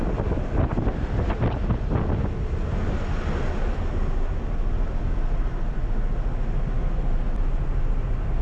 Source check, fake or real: real